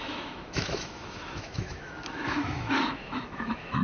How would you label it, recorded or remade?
remade